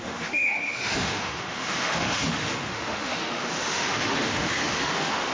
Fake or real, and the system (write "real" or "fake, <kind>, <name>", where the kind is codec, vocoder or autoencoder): fake, autoencoder, DAC-VAE